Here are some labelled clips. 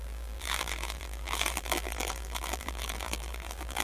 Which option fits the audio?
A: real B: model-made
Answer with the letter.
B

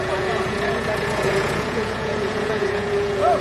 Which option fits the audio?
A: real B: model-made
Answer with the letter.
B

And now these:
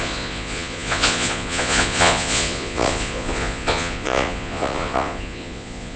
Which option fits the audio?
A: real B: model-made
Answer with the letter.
B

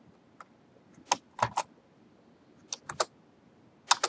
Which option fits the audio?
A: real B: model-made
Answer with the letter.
A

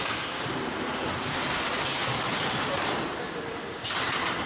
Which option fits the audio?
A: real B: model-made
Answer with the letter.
A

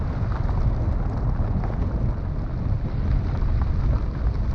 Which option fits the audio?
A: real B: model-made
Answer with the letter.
A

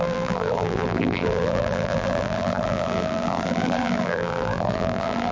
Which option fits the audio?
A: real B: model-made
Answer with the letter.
B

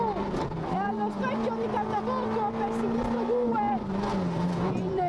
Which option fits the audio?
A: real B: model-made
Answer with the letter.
A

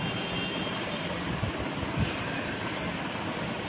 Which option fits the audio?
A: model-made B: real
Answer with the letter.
B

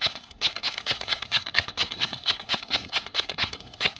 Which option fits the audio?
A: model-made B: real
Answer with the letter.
A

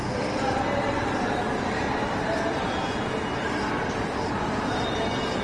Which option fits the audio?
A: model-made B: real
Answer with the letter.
B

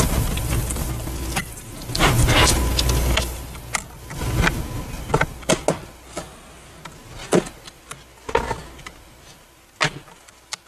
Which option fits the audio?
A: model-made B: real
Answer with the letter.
B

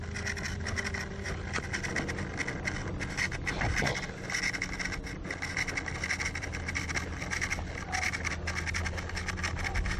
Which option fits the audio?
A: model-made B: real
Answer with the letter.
B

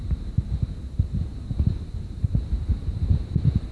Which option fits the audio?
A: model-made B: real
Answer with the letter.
A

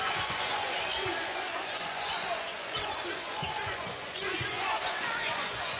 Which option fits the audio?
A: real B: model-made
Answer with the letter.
B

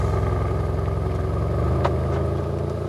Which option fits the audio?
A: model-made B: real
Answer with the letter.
B